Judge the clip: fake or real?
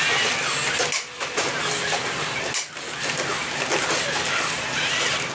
real